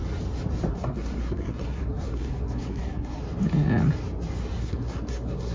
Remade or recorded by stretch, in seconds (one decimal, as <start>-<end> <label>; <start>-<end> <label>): 0.0-0.7 recorded; 0.7-3.2 remade; 3.2-4.6 recorded; 4.6-5.5 remade